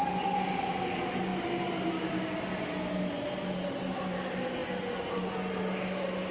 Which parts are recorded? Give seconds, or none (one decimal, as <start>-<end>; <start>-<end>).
0.0-6.3